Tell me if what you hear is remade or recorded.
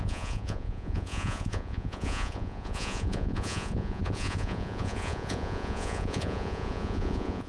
remade